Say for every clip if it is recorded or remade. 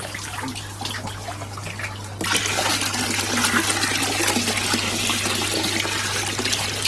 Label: recorded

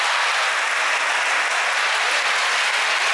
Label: recorded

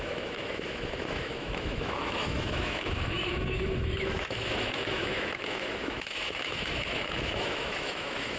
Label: remade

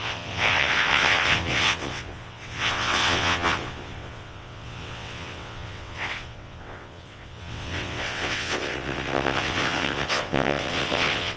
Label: remade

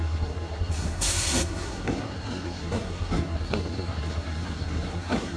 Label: remade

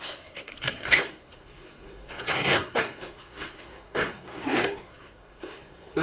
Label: remade